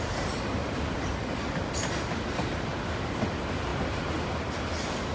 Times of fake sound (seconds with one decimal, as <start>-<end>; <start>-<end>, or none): 0.6-1.4; 3.7-4.3